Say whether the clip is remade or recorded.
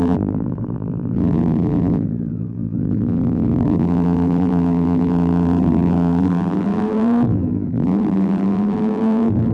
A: remade